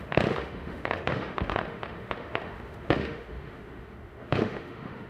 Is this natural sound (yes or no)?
no